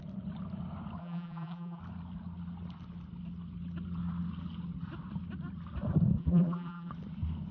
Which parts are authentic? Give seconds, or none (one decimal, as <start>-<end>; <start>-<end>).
0.0-1.0; 1.8-6.2; 6.9-7.5